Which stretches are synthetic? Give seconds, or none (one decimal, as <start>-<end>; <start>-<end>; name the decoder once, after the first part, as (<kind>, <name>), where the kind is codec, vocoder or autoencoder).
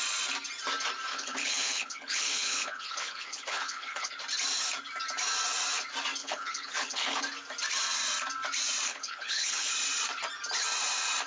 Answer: 1.1-4.1 (codec, HILCodec); 6.2-7.2; 8.9-9.7